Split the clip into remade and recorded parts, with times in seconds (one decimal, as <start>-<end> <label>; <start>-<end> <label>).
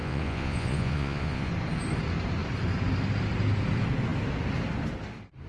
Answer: 0.0-1.5 remade; 1.5-5.5 recorded